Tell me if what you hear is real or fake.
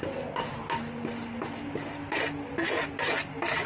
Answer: real